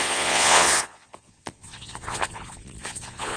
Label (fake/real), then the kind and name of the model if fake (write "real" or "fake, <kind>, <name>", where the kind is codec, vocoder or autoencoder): fake, vocoder, Vocos